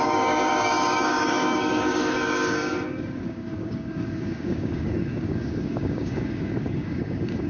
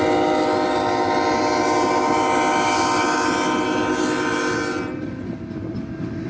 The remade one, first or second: first